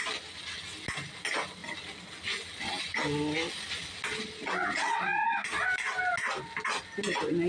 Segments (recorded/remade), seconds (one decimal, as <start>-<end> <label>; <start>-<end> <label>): 0.0-7.5 recorded